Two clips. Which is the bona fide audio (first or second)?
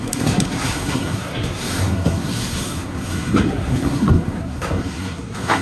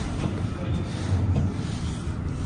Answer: second